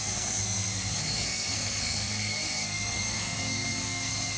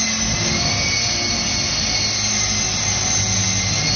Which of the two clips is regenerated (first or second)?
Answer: first